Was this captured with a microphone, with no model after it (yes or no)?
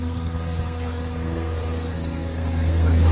no